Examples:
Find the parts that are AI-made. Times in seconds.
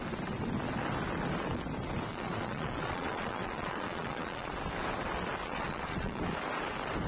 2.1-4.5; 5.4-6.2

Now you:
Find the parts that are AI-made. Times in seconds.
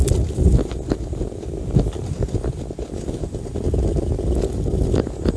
none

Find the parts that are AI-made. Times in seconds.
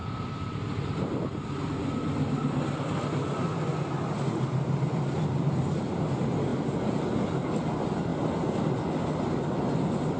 none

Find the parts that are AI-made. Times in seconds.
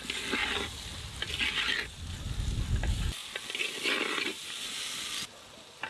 none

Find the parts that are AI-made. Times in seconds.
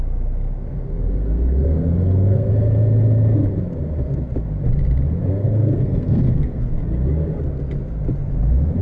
0.9-2.5; 5.4-6.6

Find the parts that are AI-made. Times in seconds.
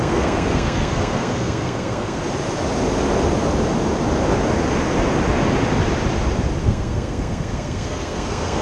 0.0-2.2; 6.6-8.6